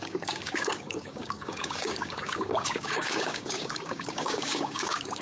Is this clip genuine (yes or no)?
no